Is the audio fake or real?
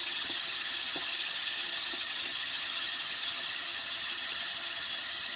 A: fake